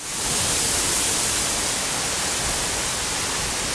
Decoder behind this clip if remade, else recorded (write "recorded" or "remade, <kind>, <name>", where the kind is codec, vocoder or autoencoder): recorded